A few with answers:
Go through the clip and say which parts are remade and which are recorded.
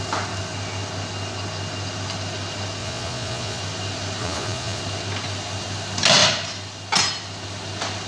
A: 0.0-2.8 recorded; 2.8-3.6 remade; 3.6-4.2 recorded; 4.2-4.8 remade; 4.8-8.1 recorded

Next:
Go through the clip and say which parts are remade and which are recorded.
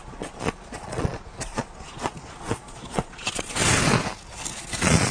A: 0.0-3.6 remade; 3.6-4.5 recorded; 4.5-5.1 remade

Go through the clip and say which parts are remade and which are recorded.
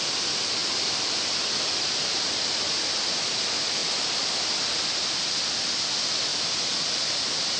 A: 0.0-7.6 recorded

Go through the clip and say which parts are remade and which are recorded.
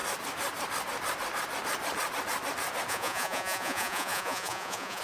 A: 0.0-2.9 recorded; 2.9-5.0 remade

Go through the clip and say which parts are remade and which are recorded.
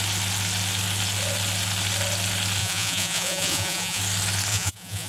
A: 0.0-2.6 recorded; 2.6-4.0 remade; 4.0-4.5 recorded; 4.5-5.1 remade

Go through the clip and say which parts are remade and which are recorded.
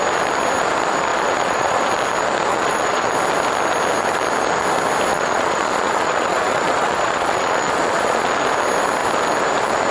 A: 0.0-1.1 recorded; 1.1-1.8 remade; 1.8-2.5 recorded; 2.5-3.1 remade; 3.1-5.1 recorded; 5.1-8.3 remade; 8.3-9.9 recorded